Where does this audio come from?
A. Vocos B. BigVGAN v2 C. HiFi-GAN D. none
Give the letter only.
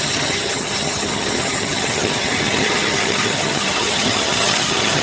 C